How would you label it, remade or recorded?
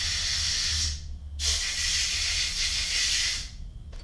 recorded